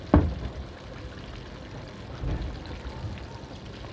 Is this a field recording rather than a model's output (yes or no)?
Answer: yes